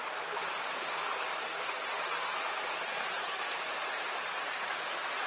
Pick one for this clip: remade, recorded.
recorded